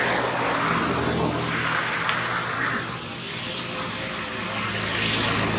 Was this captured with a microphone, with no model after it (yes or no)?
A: yes